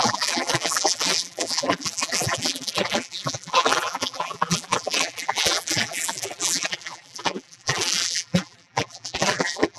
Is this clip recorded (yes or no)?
no